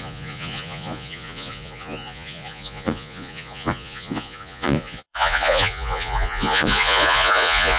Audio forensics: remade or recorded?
remade